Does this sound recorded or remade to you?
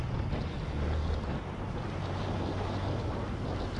recorded